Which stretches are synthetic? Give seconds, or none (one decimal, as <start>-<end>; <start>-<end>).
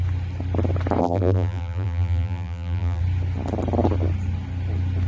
1.0-3.0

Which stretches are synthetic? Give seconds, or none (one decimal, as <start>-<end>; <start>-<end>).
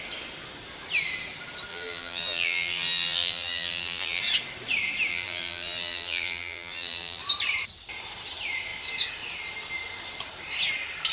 1.7-4.2; 5.1-7.2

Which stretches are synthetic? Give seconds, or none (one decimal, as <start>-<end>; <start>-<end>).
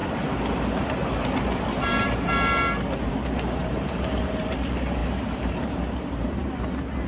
3.1-6.4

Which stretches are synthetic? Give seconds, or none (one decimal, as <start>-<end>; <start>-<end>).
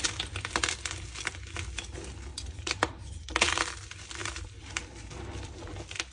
2.3-3.6; 4.2-4.8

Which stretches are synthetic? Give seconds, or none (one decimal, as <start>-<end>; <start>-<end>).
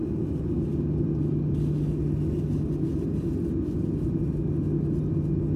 none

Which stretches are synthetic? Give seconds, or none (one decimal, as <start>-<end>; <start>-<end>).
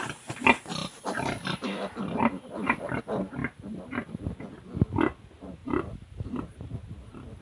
0.8-3.0; 5.6-6.4